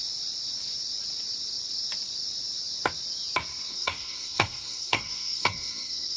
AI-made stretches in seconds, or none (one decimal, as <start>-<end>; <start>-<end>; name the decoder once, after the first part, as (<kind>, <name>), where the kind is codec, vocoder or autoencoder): 3.7-6.2 (codec, SNAC)